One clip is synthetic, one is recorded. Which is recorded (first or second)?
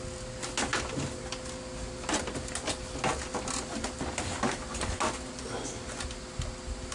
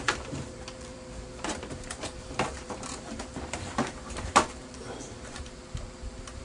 first